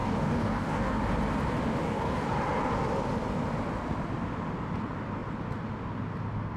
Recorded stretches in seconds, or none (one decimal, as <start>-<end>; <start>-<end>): 1.0-1.8; 2.3-6.6